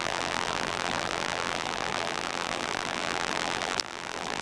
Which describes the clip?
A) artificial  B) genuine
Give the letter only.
A